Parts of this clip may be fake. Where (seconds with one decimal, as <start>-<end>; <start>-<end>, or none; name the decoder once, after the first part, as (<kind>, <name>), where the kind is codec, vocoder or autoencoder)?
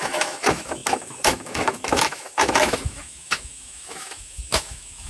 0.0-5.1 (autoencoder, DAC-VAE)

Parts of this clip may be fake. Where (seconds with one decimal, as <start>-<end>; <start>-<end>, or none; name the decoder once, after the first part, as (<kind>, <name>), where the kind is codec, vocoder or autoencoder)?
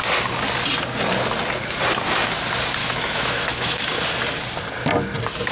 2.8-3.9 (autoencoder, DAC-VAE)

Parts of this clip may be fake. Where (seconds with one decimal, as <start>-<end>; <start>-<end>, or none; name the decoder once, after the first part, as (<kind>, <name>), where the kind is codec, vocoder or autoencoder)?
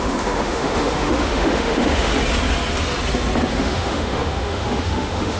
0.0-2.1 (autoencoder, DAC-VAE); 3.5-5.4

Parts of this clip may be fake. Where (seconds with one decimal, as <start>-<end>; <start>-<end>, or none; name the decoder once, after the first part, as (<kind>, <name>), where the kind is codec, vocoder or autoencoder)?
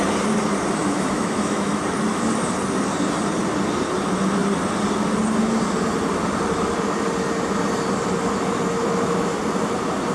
0.8-1.8 (autoencoder, DAC-VAE)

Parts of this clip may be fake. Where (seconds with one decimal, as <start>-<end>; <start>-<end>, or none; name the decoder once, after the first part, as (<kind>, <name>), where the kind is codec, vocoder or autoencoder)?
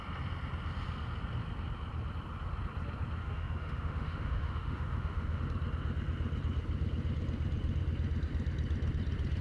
3.2-5.4 (autoencoder, DAC-VAE)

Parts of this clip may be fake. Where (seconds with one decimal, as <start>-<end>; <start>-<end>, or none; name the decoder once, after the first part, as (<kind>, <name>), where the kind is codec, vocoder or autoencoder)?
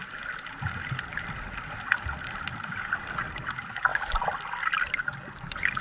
none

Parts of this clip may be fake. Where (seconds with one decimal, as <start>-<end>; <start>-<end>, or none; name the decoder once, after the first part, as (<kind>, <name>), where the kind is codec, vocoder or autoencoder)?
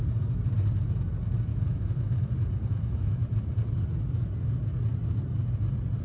1.5-2.3 (autoencoder, DAC-VAE); 2.7-3.3